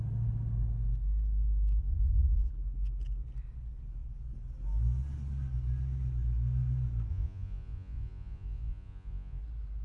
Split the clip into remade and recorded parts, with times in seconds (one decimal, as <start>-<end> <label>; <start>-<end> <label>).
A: 0.0-1.8 recorded; 1.8-2.5 remade; 2.5-7.1 recorded; 7.1-9.4 remade; 9.4-9.8 recorded